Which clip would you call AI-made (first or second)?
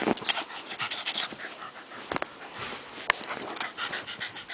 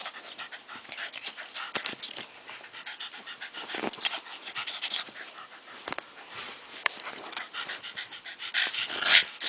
second